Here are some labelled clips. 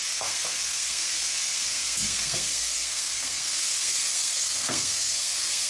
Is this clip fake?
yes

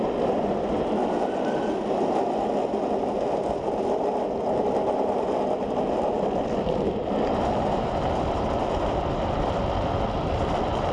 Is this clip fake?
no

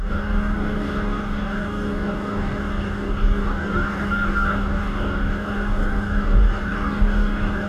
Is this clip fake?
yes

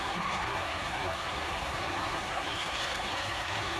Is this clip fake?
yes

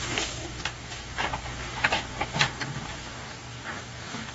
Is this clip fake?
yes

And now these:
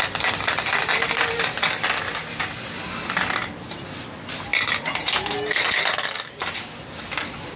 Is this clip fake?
no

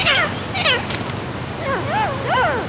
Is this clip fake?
no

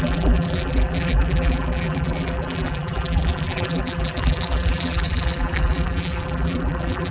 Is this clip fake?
yes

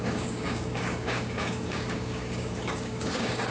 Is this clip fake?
yes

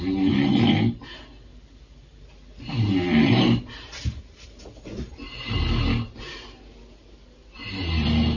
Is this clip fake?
no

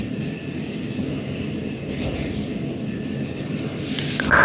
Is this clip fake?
no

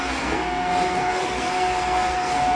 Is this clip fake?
yes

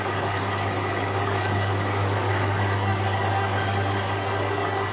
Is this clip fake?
yes